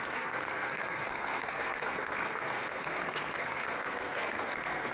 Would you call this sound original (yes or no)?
no